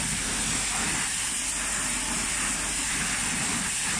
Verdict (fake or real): real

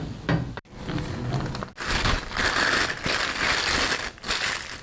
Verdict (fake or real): real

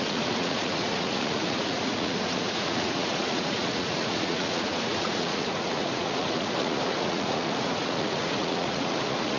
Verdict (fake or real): fake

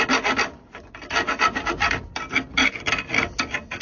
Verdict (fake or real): real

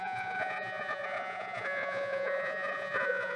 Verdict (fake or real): fake